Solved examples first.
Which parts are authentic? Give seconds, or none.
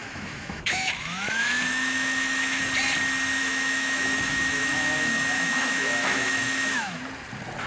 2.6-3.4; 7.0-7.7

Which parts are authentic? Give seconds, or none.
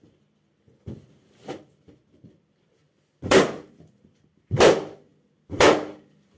0.0-6.4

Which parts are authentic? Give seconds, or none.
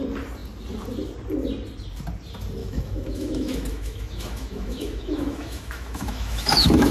0.0-2.6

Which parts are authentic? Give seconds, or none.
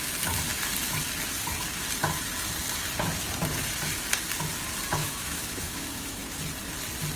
0.0-5.0; 6.4-7.2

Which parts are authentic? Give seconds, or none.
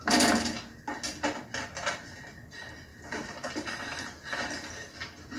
0.0-5.4